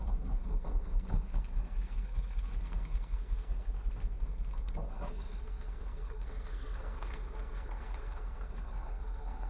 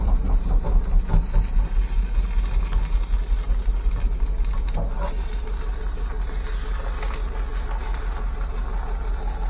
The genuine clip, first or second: second